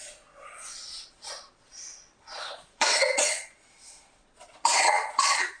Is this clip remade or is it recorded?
remade